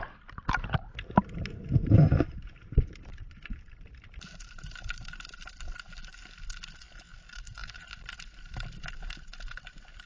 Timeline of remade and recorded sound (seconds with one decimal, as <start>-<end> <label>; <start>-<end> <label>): 0.0-6.2 remade; 6.2-7.2 recorded; 7.2-9.3 remade; 9.3-10.1 recorded